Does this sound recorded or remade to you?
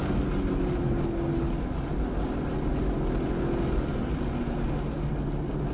recorded